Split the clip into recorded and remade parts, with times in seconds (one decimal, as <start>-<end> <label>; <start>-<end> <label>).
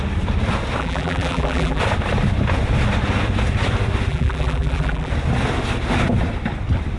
0.0-0.8 recorded; 0.8-1.8 remade; 1.8-4.1 recorded; 4.1-5.1 remade; 5.1-7.0 recorded